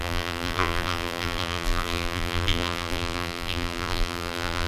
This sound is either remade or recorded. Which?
remade